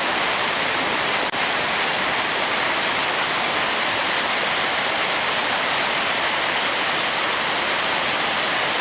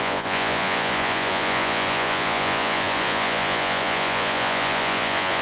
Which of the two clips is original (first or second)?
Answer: first